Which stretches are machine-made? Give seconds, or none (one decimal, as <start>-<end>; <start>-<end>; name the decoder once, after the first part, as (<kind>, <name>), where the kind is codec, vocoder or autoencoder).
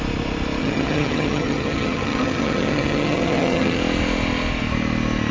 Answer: 0.6-3.8 (vocoder, HiFi-GAN)